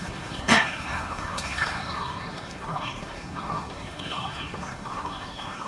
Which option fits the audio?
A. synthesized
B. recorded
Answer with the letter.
A